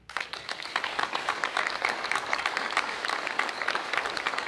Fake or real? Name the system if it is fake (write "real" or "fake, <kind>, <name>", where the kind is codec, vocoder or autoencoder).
fake, codec, DAC